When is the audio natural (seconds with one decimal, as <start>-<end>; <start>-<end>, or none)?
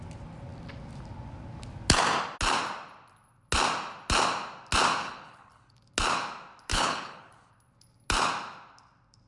0.0-5.0; 5.7-6.7; 7.5-9.3